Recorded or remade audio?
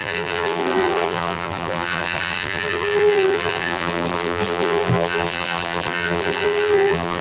remade